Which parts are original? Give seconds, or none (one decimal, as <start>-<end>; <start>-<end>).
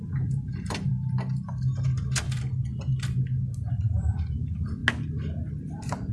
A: 0.9-3.7; 4.8-6.1